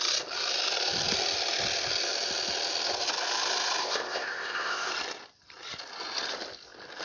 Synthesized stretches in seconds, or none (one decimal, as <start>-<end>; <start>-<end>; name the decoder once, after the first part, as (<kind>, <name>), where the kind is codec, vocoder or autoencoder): 3.8-4.9 (codec, ZipCodec)